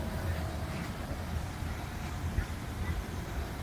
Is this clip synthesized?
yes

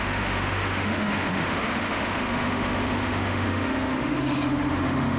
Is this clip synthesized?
yes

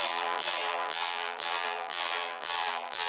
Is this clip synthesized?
yes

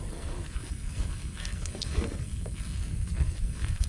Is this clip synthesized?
yes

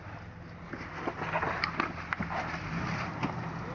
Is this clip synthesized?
no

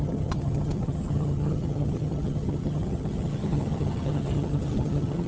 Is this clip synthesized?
yes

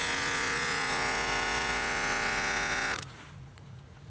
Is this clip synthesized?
yes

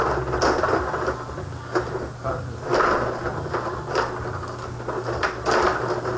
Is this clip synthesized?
no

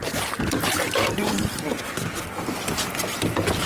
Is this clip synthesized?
no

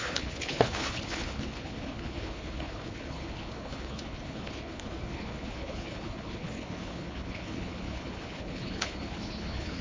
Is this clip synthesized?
yes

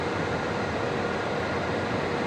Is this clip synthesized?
no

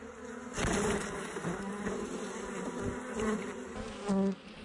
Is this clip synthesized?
no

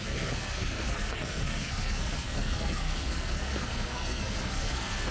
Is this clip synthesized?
yes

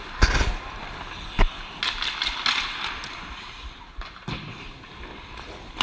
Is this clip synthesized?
no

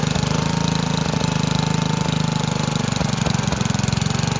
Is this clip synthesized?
no